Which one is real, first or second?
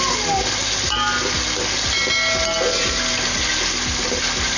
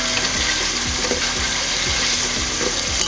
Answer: first